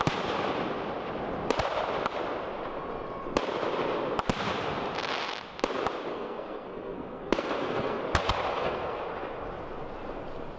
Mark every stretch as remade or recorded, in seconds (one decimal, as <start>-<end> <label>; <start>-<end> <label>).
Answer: 0.0-6.1 recorded; 6.1-8.0 remade; 8.0-8.5 recorded; 8.5-9.0 remade; 9.0-10.6 recorded